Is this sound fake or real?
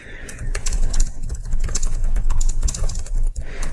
fake